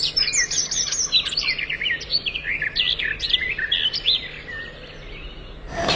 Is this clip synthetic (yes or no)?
no